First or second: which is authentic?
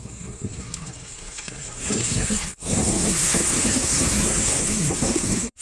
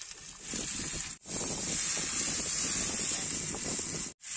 second